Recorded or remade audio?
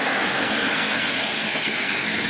remade